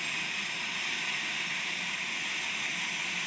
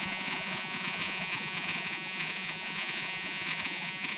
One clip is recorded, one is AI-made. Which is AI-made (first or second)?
second